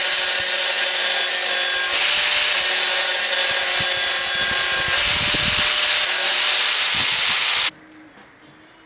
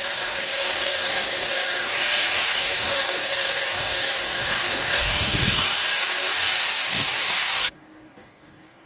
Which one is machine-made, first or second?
second